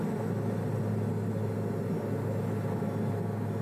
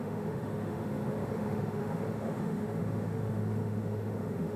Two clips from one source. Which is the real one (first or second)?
first